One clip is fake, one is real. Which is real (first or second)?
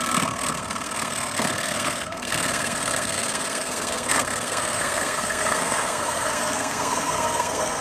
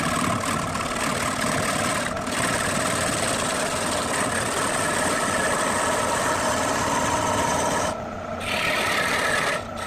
second